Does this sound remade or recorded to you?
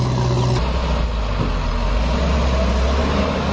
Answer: recorded